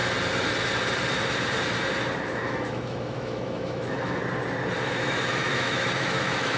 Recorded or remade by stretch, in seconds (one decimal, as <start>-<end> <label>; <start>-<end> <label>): 0.0-2.2 recorded; 2.2-4.2 remade; 4.2-4.9 recorded; 4.9-6.6 remade